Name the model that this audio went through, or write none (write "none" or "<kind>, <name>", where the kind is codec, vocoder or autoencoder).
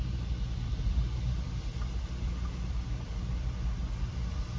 none